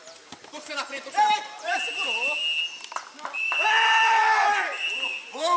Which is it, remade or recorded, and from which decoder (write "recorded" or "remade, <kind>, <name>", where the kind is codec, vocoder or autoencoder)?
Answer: recorded